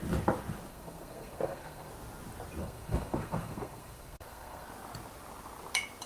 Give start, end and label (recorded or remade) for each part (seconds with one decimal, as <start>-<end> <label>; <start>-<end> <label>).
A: 0.0-0.7 recorded; 0.7-1.9 remade; 1.9-2.6 recorded; 2.6-4.7 remade; 4.7-6.1 recorded